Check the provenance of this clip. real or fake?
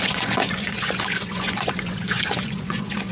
fake